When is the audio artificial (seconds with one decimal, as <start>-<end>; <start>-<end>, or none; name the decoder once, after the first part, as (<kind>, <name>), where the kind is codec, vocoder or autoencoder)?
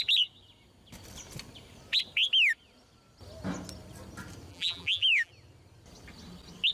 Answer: 4.5-5.3 (vocoder, BigVGAN v2)